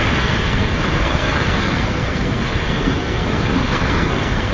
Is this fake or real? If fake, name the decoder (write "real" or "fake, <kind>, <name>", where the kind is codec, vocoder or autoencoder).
fake, codec, SNAC